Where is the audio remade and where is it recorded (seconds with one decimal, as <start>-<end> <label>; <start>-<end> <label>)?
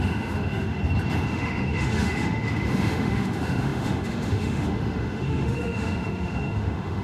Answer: 0.0-0.8 remade; 0.8-1.3 recorded; 1.3-7.0 remade